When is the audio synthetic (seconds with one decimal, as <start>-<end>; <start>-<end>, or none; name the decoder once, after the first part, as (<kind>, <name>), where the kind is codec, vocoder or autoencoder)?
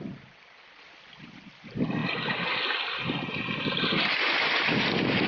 none